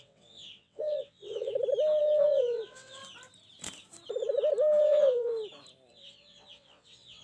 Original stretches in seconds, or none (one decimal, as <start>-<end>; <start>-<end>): 1.5-2.0; 3.0-4.8; 5.3-5.9